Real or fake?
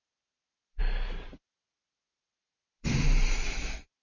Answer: real